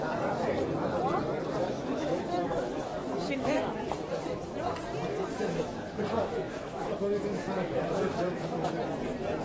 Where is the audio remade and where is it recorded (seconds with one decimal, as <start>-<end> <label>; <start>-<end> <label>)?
0.0-1.6 recorded; 1.6-3.8 remade; 3.8-5.1 recorded; 5.1-8.7 remade; 8.7-9.4 recorded